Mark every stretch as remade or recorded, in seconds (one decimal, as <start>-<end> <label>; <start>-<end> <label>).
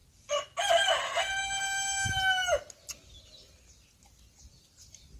0.0-5.2 recorded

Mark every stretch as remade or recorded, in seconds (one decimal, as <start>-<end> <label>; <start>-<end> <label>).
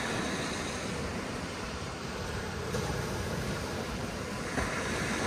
0.0-1.1 recorded; 1.1-4.3 remade; 4.3-5.3 recorded